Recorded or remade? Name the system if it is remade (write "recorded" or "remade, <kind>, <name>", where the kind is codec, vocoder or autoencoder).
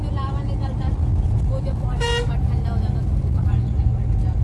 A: recorded